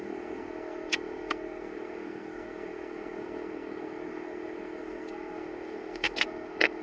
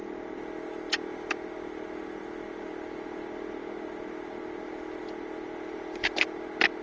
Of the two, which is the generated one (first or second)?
first